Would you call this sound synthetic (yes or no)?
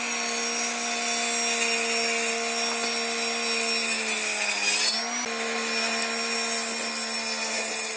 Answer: no